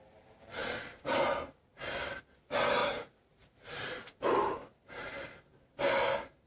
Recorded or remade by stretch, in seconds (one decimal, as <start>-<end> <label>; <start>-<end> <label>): 0.0-0.6 recorded; 0.6-2.2 remade; 2.2-2.8 recorded; 2.8-5.5 remade; 5.5-6.5 recorded